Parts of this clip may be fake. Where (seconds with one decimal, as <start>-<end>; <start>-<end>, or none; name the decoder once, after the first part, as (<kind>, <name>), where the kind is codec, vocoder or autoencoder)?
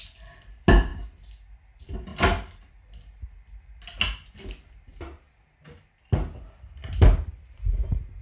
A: none